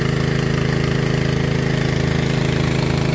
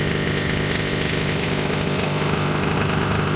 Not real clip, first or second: second